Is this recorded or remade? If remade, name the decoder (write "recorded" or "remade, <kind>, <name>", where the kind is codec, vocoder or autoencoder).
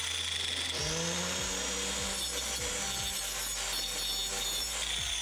recorded